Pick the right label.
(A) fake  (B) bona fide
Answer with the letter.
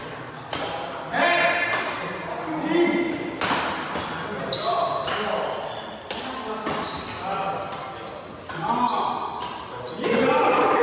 B